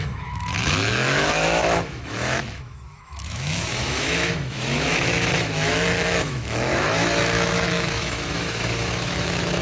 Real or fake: fake